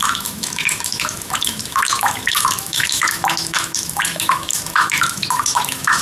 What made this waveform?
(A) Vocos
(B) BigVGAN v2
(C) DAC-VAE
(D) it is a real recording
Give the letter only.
C